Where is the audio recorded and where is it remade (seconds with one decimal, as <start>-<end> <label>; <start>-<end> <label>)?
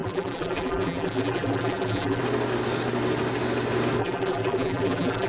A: 0.0-2.2 remade; 2.2-4.0 recorded; 4.0-5.3 remade